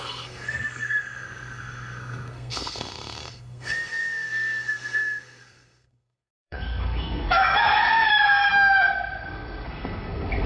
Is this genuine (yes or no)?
no